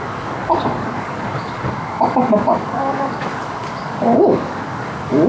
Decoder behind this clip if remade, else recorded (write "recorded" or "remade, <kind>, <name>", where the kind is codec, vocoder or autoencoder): remade, codec, DAC